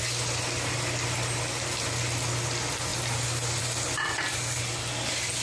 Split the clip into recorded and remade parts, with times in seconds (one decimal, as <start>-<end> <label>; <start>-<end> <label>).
0.0-5.4 recorded